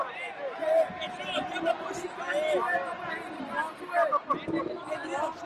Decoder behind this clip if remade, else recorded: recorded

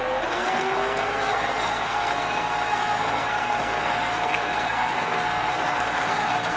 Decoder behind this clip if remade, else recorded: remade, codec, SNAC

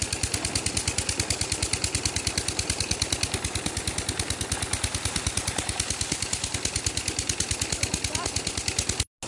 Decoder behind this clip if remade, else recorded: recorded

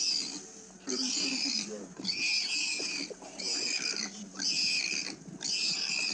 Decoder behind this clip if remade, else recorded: recorded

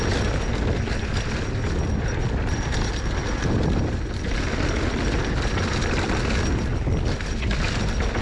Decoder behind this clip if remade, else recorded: recorded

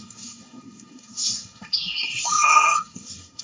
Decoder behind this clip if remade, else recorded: remade, codec, SNAC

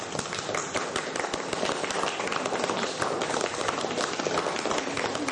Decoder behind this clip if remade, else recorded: recorded